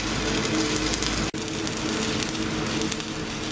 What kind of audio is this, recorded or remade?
recorded